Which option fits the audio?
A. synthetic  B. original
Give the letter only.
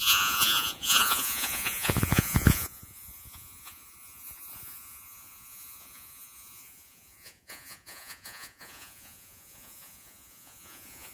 A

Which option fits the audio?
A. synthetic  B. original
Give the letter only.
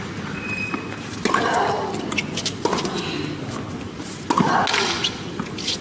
B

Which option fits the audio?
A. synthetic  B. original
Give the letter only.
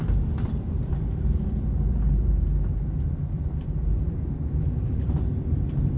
A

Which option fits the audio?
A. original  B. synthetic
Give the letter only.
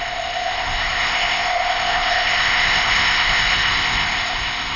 B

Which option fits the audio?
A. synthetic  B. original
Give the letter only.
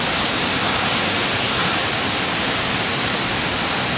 B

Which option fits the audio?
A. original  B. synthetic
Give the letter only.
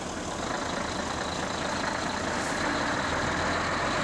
A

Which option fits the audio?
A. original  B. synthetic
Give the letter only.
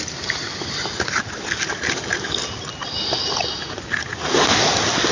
A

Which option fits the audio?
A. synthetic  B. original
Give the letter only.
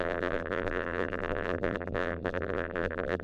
A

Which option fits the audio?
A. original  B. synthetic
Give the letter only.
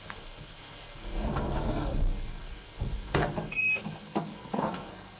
B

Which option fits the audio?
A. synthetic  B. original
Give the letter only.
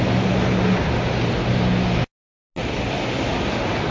B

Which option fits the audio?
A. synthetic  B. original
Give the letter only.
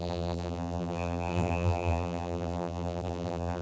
A